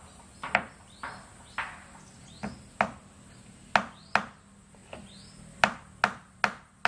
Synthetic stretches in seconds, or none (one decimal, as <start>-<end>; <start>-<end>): none